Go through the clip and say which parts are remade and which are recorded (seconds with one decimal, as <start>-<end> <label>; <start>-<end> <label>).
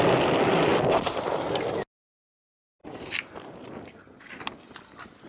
0.0-2.8 recorded; 2.8-3.7 remade; 3.7-5.3 recorded